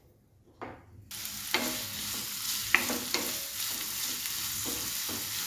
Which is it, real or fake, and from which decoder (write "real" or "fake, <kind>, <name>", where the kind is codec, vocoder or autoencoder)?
real